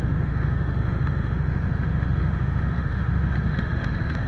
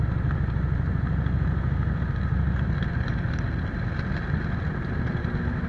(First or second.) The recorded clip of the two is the second